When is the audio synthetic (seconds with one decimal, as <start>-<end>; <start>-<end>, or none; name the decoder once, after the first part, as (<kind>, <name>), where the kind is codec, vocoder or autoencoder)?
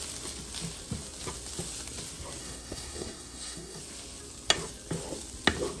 2.4-3.8 (codec, SNAC)